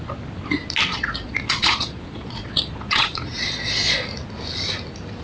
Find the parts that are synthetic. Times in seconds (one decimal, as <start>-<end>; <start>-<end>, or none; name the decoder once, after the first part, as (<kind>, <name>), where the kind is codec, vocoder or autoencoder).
0.9-4.0 (vocoder, Vocos)